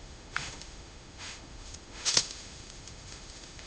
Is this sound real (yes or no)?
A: no